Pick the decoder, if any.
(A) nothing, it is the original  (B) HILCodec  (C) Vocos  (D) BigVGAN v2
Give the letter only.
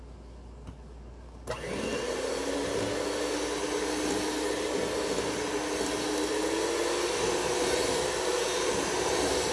A